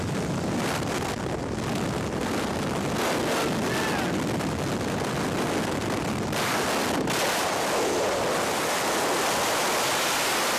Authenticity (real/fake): real